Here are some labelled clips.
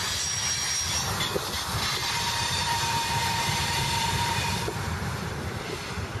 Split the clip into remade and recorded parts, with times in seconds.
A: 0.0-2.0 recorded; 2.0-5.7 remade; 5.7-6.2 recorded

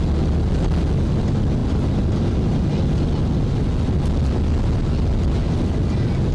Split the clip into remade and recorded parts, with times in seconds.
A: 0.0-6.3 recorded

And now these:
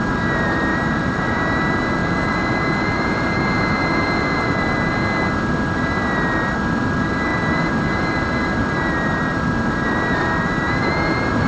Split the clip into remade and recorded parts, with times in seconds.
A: 0.0-0.7 recorded; 0.7-1.6 remade; 1.6-2.0 recorded; 2.0-4.6 remade; 4.6-11.5 recorded

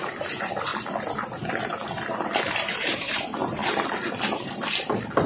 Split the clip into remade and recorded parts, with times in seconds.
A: 0.0-0.7 remade; 0.7-1.6 recorded; 1.6-5.3 remade

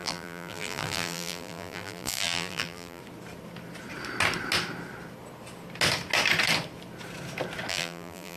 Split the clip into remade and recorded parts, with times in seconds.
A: 0.0-3.0 remade; 3.0-7.7 recorded; 7.7-8.4 remade

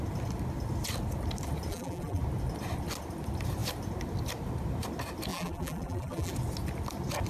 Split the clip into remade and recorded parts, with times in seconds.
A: 0.0-1.7 recorded; 1.7-2.2 remade; 2.2-5.3 recorded; 5.3-6.3 remade; 6.3-7.3 recorded